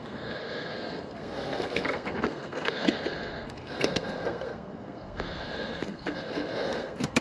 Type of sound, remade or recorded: remade